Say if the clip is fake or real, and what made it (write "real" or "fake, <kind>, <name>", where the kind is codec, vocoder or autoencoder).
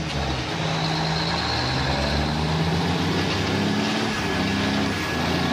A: real